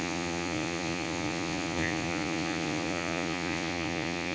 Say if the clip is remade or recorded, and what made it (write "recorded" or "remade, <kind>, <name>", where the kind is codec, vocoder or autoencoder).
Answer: remade, vocoder, Vocos